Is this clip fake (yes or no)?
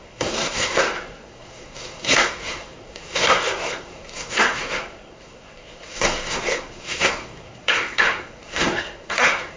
yes